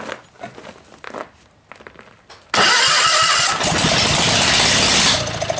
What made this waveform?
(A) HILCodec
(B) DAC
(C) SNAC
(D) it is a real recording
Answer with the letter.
D